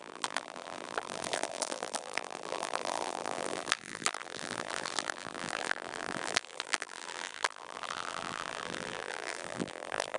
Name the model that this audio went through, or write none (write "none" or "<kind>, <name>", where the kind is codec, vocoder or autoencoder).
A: vocoder, BigVGAN v2